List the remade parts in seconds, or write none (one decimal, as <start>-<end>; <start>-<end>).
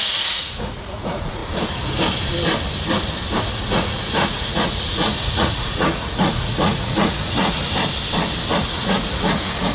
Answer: 0.0-1.4; 3.4-7.6; 8.6-9.7